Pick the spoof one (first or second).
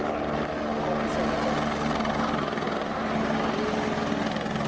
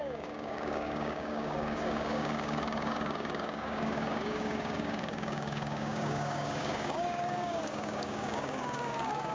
second